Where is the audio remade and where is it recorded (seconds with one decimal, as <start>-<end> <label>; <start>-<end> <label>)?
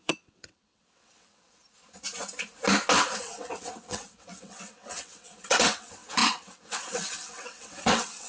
0.0-1.6 remade; 1.6-3.2 recorded; 3.2-8.3 remade